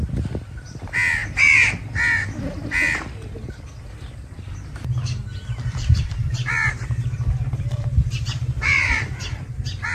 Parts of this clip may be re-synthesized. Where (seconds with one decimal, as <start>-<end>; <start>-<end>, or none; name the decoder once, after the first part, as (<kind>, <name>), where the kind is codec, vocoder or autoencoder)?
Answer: 5.3-9.5 (vocoder, BigVGAN v2)